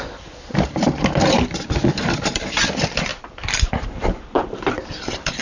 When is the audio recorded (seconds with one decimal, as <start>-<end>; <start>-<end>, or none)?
none